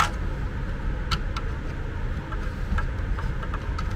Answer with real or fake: real